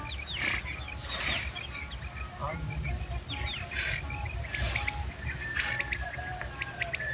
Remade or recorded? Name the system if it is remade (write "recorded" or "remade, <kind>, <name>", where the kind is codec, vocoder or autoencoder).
recorded